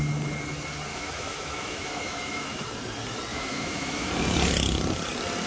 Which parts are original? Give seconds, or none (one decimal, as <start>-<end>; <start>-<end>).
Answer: 0.0-0.9; 2.6-3.3; 4.1-5.5

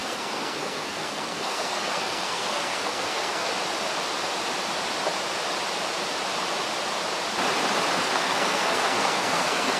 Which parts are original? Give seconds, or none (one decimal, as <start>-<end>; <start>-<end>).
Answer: 3.5-8.0

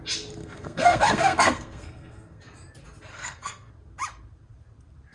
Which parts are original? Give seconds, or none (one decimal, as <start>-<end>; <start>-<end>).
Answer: 0.0-0.4; 2.4-3.1; 3.7-5.1

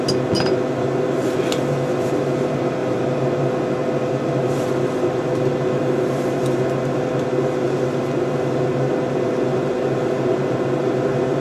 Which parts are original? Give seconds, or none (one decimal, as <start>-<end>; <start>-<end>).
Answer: 0.0-11.4

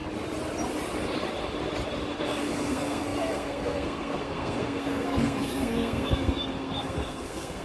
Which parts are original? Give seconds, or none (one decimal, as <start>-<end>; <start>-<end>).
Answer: 0.0-2.2

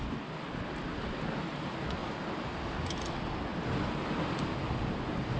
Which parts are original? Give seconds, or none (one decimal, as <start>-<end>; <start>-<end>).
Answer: 0.0-2.0; 2.7-5.4

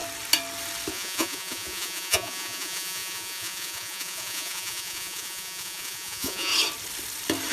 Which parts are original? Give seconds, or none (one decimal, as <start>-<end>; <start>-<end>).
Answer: 0.0-0.9; 6.5-7.5